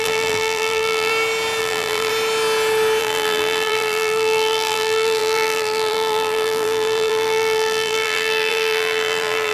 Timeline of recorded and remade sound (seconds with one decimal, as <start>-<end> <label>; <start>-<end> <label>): 0.0-1.1 remade; 1.1-1.6 recorded; 1.6-2.1 remade; 2.1-3.0 recorded; 3.0-9.5 remade